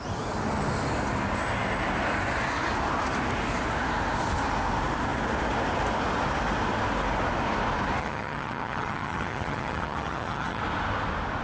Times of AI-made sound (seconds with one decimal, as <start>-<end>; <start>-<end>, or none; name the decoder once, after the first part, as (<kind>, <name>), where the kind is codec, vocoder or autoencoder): 8.0-10.6 (vocoder, HiFi-GAN)

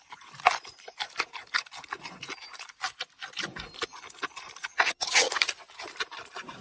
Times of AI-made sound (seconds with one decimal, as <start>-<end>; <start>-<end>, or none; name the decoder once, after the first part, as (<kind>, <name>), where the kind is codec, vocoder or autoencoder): 4.7-5.3 (vocoder, HiFi-GAN)

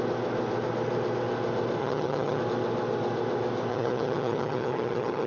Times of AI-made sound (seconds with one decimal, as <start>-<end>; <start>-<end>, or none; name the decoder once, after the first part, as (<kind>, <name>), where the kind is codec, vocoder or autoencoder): 1.8-2.4 (vocoder, HiFi-GAN); 3.7-5.3

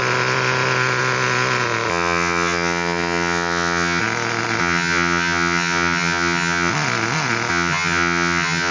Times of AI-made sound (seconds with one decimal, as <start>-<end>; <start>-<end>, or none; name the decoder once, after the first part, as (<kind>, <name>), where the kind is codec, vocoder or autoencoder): 1.9-4.0 (vocoder, HiFi-GAN); 4.6-6.7; 7.5-8.7